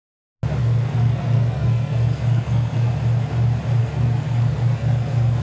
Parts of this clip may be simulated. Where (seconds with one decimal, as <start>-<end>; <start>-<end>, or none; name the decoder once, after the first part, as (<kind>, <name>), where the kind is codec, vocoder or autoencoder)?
0.6-2.9 (codec, SNAC); 3.8-5.4